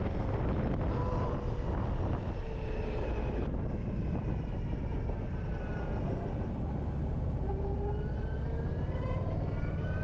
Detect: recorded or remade recorded